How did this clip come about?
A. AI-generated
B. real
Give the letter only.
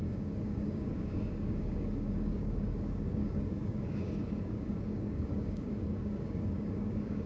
A